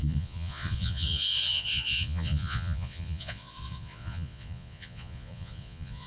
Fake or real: fake